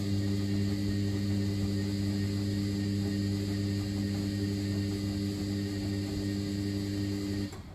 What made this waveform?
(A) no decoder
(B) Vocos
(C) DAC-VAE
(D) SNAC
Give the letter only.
A